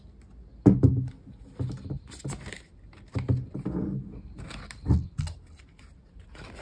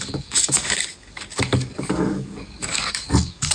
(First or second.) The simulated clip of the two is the second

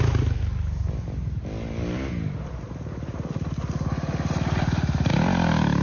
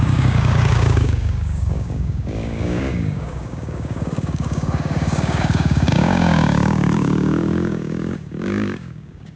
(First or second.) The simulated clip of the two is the second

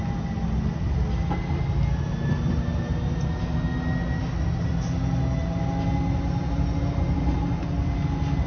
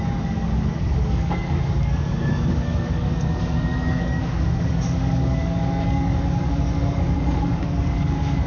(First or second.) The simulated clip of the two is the second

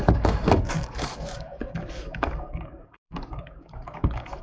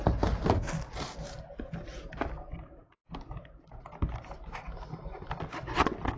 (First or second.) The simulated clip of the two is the first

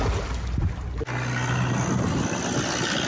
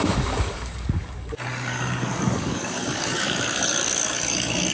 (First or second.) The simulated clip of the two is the second